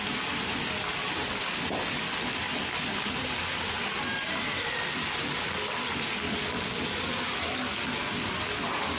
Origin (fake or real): real